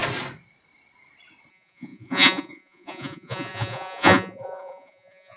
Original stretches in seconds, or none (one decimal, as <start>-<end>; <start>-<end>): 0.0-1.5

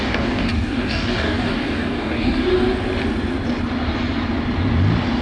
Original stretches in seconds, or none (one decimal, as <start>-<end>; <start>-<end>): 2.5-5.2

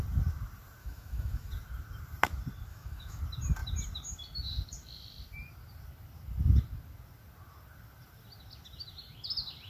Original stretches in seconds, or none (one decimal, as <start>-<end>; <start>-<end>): 0.0-0.8; 1.5-2.7; 3.2-9.7

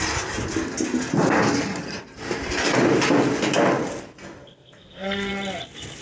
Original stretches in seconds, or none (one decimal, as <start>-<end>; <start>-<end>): 0.0-4.4; 5.3-6.0

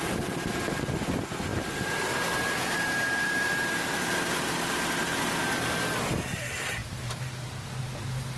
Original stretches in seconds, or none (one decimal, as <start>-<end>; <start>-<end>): 0.0-1.5; 3.9-6.8; 7.7-8.4

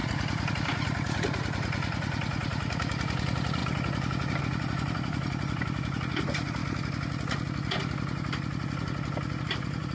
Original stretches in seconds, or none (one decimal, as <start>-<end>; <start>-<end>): 6.6-9.4

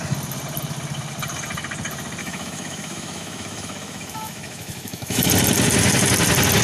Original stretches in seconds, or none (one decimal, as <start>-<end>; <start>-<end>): 0.0-2.2; 5.3-6.6

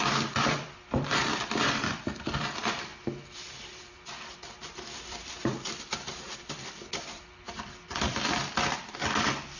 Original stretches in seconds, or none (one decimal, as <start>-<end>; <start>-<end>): none